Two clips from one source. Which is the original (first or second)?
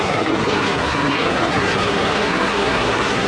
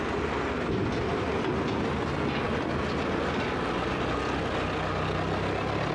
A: second